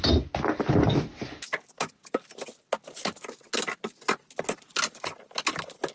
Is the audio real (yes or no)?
yes